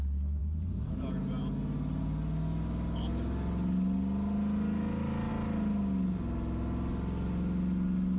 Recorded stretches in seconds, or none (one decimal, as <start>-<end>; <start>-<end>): 0.0-8.2